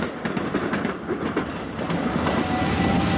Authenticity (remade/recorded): recorded